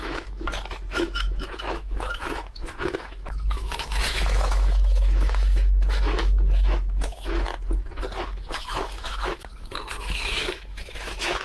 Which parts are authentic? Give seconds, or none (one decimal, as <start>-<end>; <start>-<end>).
7.5-8.2